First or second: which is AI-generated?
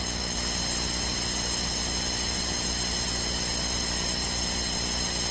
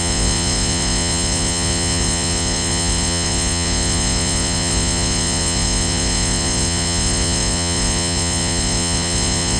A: second